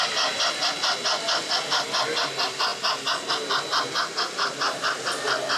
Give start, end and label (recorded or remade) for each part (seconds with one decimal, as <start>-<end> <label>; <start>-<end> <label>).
0.0-5.6 recorded